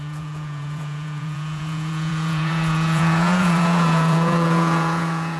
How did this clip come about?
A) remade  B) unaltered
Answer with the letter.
A